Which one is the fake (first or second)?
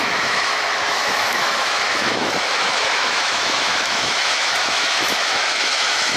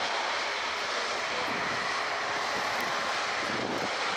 first